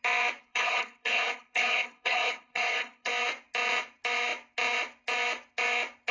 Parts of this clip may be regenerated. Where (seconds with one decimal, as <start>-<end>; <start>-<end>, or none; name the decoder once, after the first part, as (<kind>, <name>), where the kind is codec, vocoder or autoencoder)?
0.4-3.1 (codec, HILCodec)